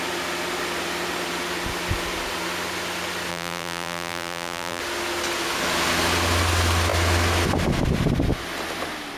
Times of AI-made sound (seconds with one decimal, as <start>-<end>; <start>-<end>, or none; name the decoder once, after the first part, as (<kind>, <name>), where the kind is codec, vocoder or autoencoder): 3.3-4.8 (vocoder, BigVGAN v2)